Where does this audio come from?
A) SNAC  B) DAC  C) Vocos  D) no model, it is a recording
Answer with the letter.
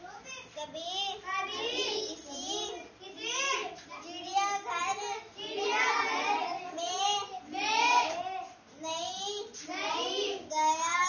D